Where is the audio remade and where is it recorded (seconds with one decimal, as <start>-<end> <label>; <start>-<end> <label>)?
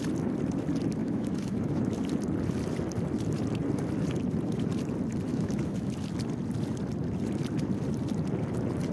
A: 0.0-1.0 recorded; 1.0-1.8 remade; 1.8-5.3 recorded; 5.3-5.9 remade; 5.9-8.9 recorded